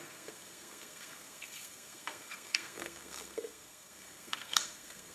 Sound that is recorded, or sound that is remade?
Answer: remade